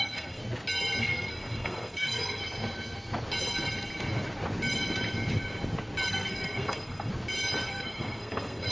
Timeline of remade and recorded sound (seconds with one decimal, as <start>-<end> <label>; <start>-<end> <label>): 0.0-0.4 remade; 0.4-1.0 recorded; 1.0-2.4 remade; 2.4-6.1 recorded; 6.1-7.1 remade; 7.1-7.7 recorded; 7.7-8.7 remade